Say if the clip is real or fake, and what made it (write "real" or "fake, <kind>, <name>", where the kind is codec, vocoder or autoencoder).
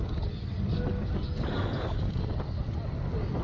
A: real